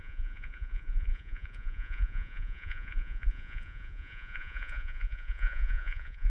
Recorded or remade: remade